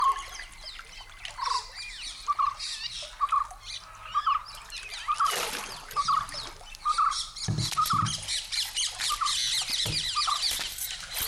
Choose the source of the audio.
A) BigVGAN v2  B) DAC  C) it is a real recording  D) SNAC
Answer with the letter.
C